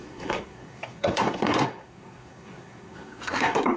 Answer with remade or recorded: remade